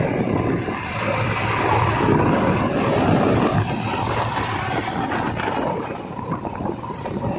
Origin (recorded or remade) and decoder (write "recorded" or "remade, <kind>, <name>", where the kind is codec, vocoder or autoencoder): recorded